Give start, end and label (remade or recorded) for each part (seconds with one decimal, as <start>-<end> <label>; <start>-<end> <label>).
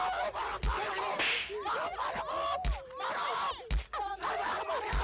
0.0-5.0 recorded